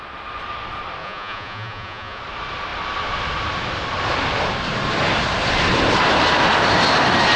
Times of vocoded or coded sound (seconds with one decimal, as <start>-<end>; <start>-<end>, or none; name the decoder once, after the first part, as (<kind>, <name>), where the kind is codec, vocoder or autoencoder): 1.0-2.2 (vocoder, Vocos)